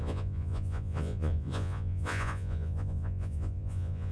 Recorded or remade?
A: remade